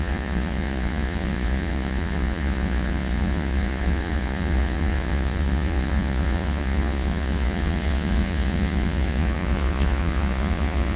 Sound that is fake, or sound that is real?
fake